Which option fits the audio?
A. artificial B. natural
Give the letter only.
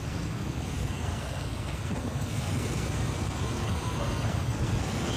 A